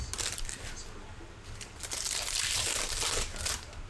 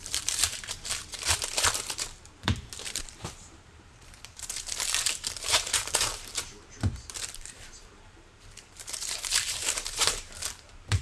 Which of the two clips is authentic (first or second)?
first